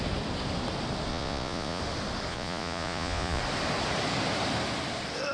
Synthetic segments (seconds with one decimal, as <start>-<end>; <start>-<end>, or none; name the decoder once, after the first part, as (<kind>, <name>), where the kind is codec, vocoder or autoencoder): 1.1-1.8 (vocoder, Vocos); 2.3-3.4